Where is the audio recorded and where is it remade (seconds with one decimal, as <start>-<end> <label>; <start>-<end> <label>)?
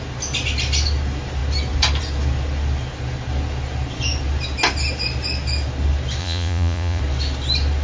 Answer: 0.0-6.2 recorded; 6.2-7.0 remade; 7.0-7.8 recorded